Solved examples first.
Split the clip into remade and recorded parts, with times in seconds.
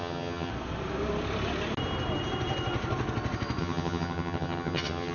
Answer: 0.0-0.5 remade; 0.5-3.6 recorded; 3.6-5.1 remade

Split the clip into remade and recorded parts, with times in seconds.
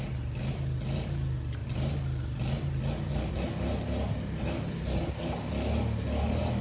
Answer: 0.0-6.6 recorded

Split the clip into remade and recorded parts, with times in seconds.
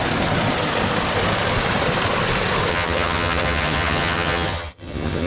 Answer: 0.0-2.7 recorded; 2.7-5.3 remade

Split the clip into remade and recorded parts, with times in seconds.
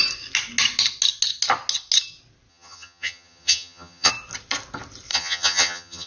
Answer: 0.0-2.5 recorded; 2.5-4.1 remade; 4.1-5.1 recorded; 5.1-6.1 remade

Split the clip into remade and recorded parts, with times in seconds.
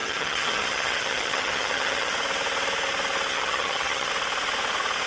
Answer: 0.0-2.1 remade; 2.1-3.3 recorded; 3.3-4.1 remade; 4.1-5.1 recorded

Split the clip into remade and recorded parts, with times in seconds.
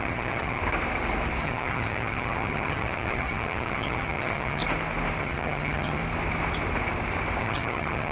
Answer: 0.0-0.6 remade; 0.6-1.4 recorded; 1.4-4.6 remade; 4.6-5.2 recorded; 5.2-6.0 remade; 6.0-7.4 recorded; 7.4-8.1 remade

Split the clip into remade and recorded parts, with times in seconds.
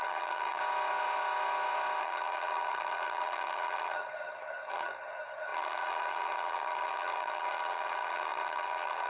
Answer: 0.0-0.6 remade; 0.6-2.0 recorded; 2.0-9.1 remade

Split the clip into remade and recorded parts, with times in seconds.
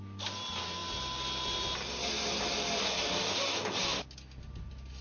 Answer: 0.0-5.0 recorded